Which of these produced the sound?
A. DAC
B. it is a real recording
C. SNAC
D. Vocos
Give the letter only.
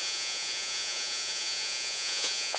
D